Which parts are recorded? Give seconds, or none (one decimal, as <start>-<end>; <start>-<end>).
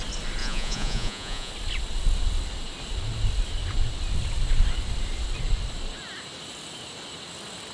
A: 0.0-0.4; 1.5-7.7